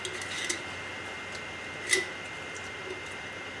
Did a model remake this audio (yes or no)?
no